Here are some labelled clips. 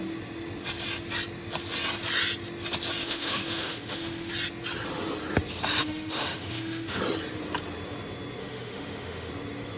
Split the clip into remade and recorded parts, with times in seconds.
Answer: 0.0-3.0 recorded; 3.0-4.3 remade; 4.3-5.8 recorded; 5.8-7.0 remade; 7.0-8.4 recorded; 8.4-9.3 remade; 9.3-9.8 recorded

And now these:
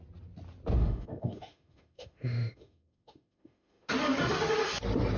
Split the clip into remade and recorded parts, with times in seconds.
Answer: 0.0-0.8 recorded; 0.8-3.9 remade; 3.9-5.2 recorded